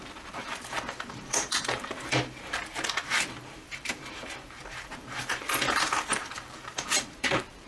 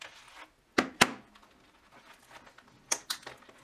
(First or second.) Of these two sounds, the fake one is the first